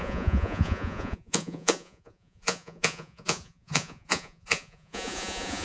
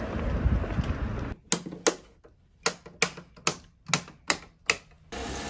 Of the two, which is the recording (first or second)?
second